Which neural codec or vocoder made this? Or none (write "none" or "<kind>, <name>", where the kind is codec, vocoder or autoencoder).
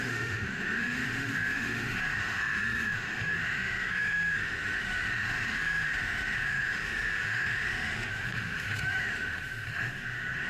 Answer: autoencoder, DAC-VAE